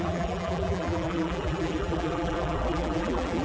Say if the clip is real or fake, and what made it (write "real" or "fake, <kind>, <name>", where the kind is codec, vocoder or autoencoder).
fake, vocoder, BigVGAN v2